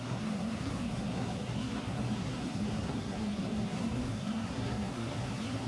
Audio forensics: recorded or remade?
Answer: remade